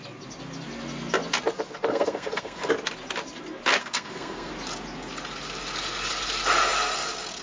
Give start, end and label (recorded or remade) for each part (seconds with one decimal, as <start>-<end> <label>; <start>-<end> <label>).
0.0-1.9 recorded; 1.9-2.7 remade; 2.7-3.8 recorded; 3.8-4.5 remade; 4.5-7.4 recorded